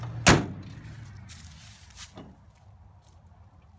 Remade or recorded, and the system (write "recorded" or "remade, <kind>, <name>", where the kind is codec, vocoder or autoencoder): recorded